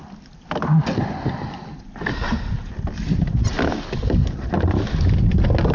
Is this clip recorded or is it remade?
recorded